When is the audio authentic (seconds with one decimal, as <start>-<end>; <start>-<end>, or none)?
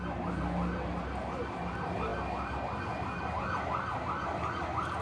0.0-5.0